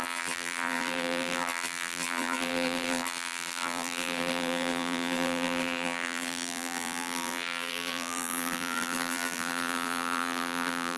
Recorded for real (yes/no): no